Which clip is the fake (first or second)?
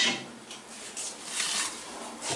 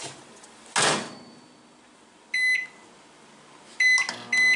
first